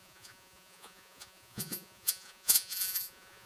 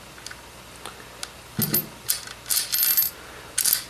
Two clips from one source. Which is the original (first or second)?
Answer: second